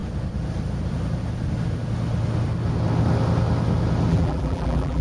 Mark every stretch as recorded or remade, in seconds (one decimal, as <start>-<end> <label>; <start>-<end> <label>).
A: 0.0-4.1 recorded; 4.1-5.0 remade